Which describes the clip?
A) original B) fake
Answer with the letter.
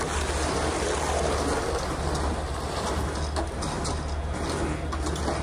A